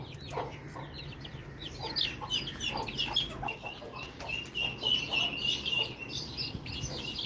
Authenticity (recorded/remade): recorded